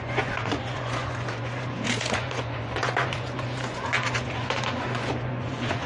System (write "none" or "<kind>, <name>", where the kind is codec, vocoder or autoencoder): vocoder, Vocos